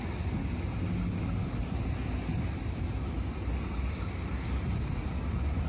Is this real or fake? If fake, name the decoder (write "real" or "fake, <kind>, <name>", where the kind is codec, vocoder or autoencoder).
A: real